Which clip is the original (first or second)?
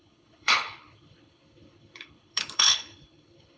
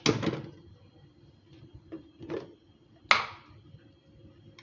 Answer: second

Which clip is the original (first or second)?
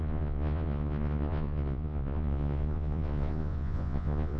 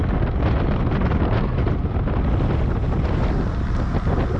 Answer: second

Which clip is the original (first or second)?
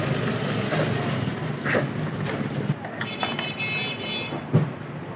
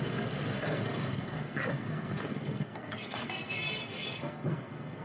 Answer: first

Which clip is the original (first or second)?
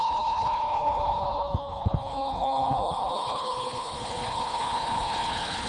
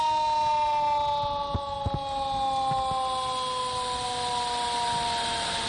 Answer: second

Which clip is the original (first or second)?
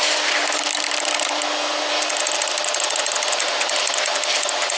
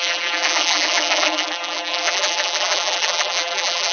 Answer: first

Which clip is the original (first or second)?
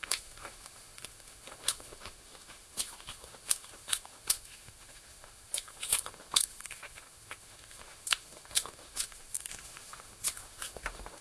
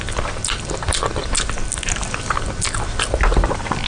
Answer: second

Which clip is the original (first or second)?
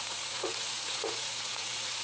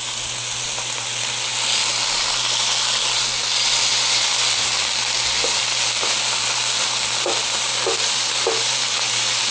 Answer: second